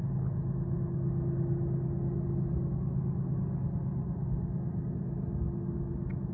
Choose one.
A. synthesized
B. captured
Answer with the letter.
B